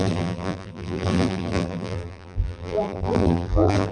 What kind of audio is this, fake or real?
fake